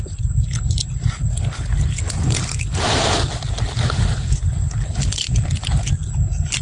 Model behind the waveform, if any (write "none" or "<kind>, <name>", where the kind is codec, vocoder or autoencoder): none